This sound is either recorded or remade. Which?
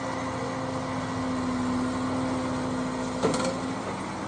recorded